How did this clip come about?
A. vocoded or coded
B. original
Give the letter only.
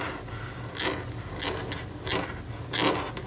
B